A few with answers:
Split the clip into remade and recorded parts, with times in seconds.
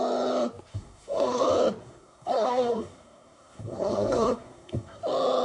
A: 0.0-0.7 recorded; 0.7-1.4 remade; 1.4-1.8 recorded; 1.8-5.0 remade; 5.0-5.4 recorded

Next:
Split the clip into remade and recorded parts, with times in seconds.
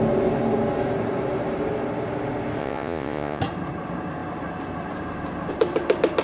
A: 0.0-2.6 recorded; 2.6-3.4 remade; 3.4-6.2 recorded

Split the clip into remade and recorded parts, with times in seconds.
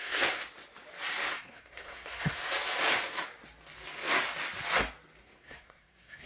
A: 0.0-0.4 remade; 0.4-1.3 recorded; 1.3-2.4 remade; 2.4-5.2 recorded; 5.2-6.3 remade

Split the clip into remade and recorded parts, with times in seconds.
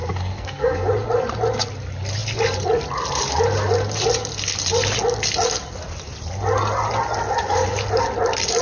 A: 0.0-0.9 remade; 0.9-8.6 recorded